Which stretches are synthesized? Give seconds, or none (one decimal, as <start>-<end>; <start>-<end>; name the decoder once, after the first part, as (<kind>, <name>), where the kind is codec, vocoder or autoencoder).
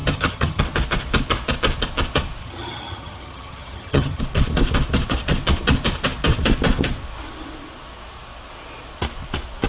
0.0-0.6 (vocoder, HiFi-GAN); 2.4-4.2